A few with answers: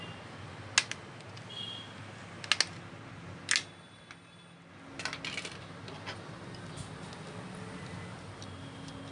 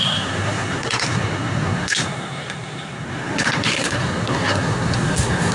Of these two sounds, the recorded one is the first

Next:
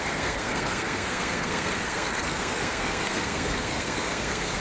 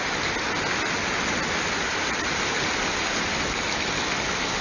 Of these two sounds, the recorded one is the second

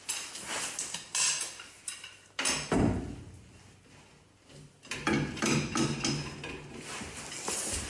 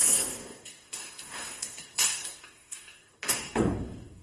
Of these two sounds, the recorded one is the first